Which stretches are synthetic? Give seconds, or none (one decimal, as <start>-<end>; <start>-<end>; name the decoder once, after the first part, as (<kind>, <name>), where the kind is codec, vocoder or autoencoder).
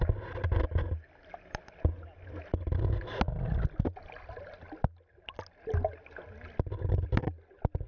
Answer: none